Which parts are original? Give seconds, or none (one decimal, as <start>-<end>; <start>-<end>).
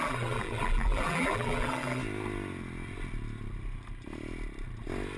2.0-5.2